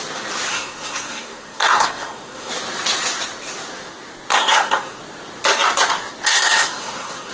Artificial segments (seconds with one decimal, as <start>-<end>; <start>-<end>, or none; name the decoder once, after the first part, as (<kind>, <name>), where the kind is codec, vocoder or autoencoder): 0.5-2.5 (codec, SNAC); 4.3-5.0; 6.3-7.3